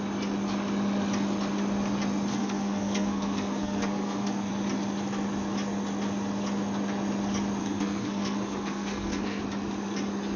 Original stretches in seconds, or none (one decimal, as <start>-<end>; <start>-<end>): 0.0-2.3; 4.5-7.6; 9.4-10.4